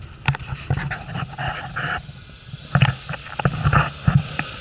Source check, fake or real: real